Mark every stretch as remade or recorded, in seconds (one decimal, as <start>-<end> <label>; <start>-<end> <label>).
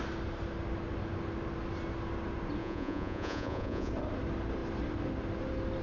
0.0-2.6 recorded; 2.6-3.9 remade; 3.9-5.8 recorded